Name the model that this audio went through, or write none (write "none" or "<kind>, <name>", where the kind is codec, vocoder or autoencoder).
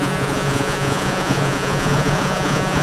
vocoder, Vocos